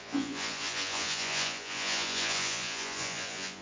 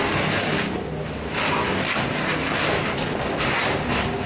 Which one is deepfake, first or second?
first